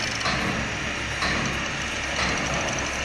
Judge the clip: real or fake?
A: real